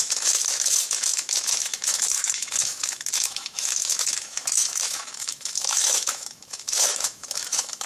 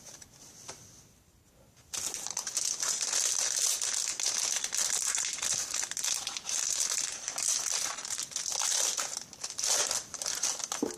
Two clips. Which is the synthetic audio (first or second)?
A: first